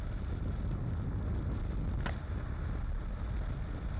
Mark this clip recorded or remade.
recorded